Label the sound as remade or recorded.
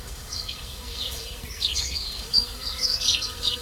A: remade